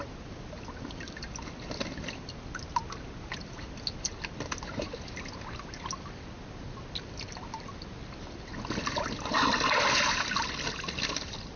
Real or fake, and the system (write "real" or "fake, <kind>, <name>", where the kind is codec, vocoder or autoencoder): real